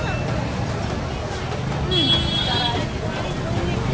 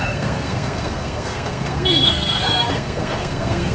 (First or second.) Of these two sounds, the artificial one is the second